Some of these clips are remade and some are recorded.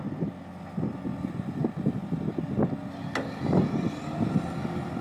recorded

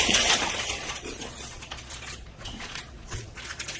remade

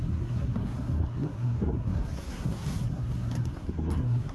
remade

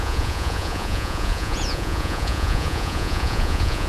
remade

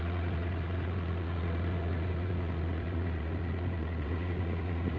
remade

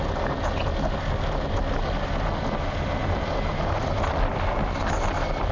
recorded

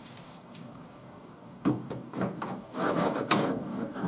remade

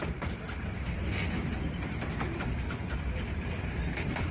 recorded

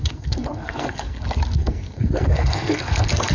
remade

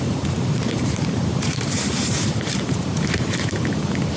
remade